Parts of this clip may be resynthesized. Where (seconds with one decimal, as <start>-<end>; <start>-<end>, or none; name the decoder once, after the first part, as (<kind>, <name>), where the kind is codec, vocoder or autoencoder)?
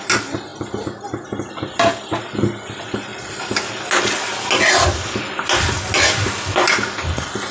none